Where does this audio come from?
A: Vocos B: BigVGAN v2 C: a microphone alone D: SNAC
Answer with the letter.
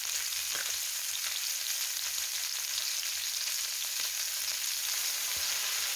C